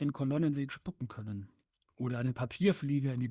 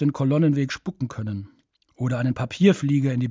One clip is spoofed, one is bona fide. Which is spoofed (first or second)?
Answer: first